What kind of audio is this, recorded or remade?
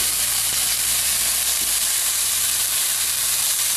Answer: remade